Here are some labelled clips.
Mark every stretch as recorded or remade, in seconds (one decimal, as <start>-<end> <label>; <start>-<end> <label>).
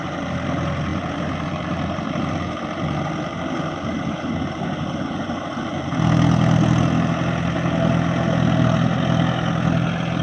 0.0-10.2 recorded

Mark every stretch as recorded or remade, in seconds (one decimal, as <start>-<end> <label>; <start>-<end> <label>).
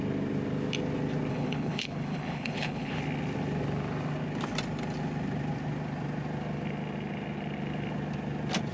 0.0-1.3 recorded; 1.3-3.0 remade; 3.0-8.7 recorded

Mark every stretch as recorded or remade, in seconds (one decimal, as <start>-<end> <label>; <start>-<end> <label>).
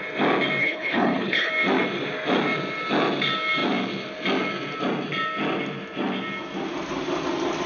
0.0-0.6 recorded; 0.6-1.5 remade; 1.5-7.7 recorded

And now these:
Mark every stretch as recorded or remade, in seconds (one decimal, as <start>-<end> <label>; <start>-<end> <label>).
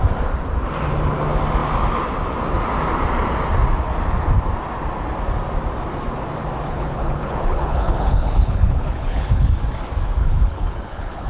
0.0-6.7 recorded; 6.7-9.6 remade; 9.6-10.2 recorded; 10.2-11.3 remade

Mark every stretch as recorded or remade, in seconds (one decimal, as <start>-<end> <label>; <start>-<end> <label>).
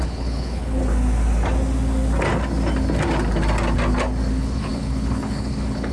0.0-0.8 remade; 0.8-4.3 recorded; 4.3-5.9 remade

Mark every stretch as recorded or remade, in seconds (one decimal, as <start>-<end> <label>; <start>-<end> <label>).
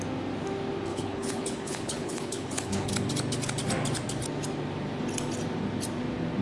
0.0-0.9 recorded; 0.9-2.9 remade; 2.9-6.4 recorded